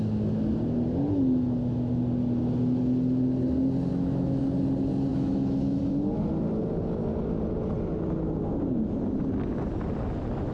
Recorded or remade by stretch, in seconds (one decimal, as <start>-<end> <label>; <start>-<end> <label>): 0.0-3.9 recorded; 3.9-4.4 remade; 4.4-5.1 recorded; 5.1-5.8 remade; 5.8-10.5 recorded